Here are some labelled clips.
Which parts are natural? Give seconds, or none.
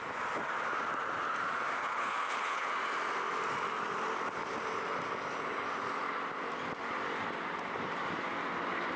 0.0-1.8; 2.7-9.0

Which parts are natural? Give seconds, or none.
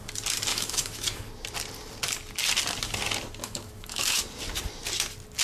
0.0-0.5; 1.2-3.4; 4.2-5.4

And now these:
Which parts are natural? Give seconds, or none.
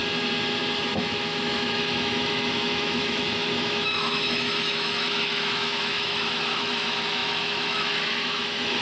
0.0-0.9